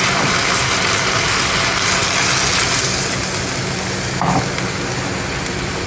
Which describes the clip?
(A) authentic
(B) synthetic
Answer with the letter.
A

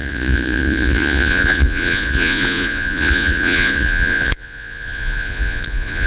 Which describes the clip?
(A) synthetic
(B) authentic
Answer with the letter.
A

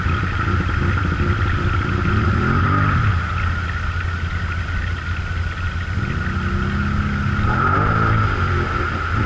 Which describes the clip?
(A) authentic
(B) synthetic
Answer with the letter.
A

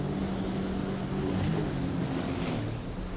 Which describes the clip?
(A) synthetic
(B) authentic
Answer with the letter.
B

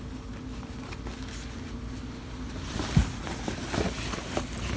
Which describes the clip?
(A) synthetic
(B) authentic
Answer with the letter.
B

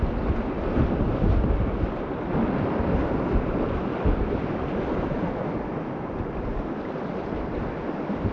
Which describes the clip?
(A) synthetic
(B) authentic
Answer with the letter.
B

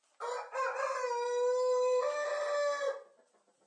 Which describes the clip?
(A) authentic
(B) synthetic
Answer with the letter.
A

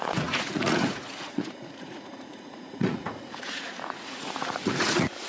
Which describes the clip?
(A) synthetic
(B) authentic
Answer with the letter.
A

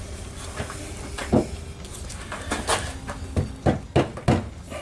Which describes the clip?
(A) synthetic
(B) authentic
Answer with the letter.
B